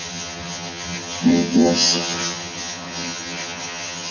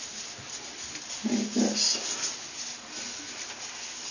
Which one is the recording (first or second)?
second